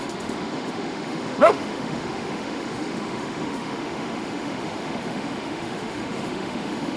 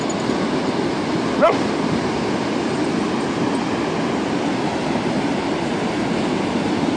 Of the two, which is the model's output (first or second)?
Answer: first